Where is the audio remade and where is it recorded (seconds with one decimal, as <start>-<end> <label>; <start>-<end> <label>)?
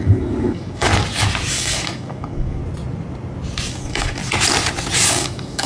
0.0-0.9 remade; 0.9-1.5 recorded; 1.5-2.6 remade; 2.6-3.7 recorded; 3.7-4.2 remade; 4.2-5.1 recorded; 5.1-5.7 remade